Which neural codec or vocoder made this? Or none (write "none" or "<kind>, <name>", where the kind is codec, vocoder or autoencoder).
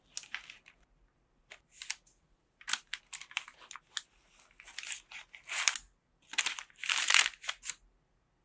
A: none